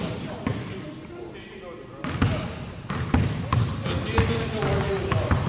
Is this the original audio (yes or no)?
yes